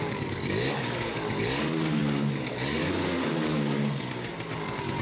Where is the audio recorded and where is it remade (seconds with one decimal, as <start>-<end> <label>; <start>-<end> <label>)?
0.0-5.0 remade